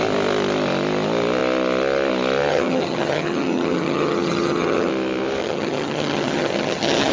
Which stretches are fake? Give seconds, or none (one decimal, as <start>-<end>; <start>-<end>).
2.5-4.9; 5.4-7.1